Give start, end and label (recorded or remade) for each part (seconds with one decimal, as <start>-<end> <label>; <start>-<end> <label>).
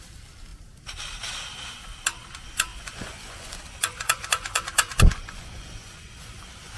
0.0-2.7 recorded; 2.7-6.8 remade